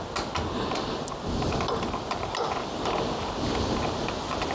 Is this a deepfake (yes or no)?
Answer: no